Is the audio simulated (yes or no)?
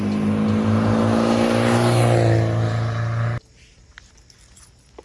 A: no